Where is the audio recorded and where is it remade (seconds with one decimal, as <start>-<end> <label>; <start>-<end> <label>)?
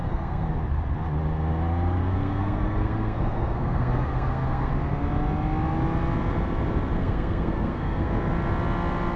0.0-0.5 remade; 0.5-2.0 recorded; 2.0-4.7 remade; 4.7-7.0 recorded; 7.0-8.1 remade; 8.1-9.2 recorded